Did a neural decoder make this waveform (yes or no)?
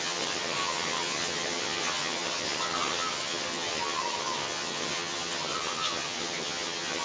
yes